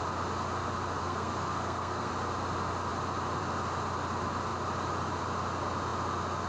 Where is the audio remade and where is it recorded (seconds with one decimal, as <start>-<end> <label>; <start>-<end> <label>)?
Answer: 0.0-1.0 recorded; 1.0-2.1 remade; 2.1-6.5 recorded